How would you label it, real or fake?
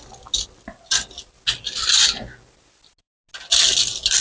real